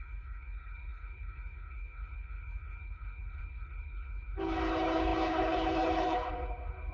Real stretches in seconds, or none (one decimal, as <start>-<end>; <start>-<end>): none